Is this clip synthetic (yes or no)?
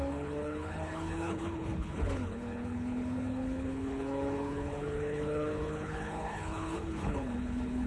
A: yes